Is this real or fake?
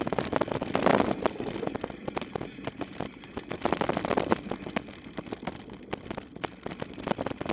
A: real